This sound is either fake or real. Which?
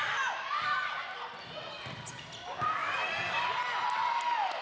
real